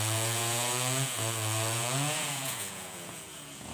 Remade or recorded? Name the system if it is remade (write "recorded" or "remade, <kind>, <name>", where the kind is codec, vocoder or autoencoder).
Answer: remade, vocoder, Vocos